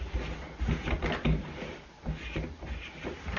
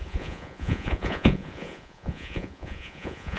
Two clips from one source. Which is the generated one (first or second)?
second